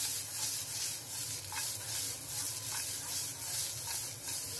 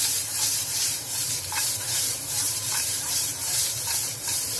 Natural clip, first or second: first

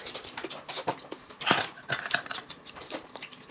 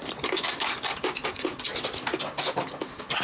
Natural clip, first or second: second